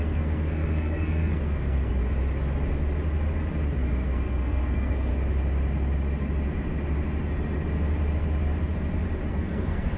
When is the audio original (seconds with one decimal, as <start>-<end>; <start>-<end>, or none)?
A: 2.0-3.8; 5.1-9.3